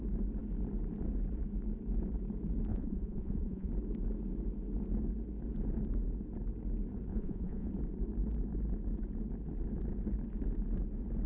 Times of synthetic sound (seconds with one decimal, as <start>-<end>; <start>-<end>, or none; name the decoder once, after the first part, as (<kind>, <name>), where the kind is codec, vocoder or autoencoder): 2.7-3.7 (vocoder, Vocos); 7.1-7.7